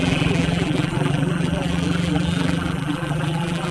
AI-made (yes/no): yes